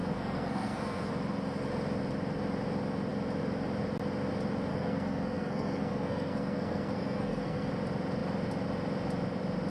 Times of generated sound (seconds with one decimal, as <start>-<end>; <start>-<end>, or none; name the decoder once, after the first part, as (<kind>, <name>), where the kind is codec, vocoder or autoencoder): 0.0-1.1 (codec, SNAC); 4.7-7.7